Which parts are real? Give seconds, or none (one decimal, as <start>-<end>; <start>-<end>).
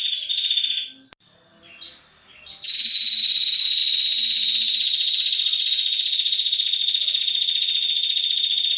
0.0-8.8